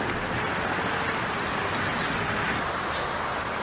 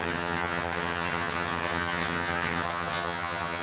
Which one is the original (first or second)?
first